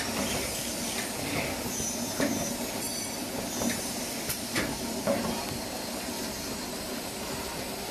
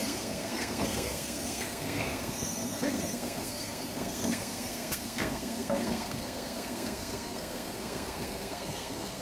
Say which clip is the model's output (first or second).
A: second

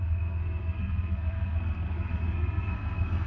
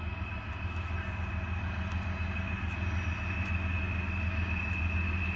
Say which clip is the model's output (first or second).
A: first